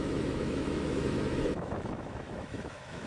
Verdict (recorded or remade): remade